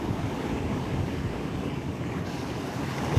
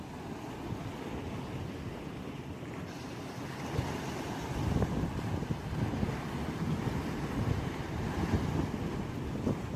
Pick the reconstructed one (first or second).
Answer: first